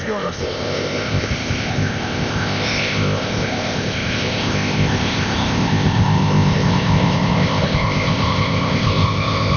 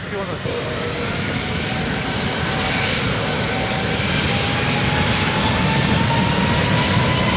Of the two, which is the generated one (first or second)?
first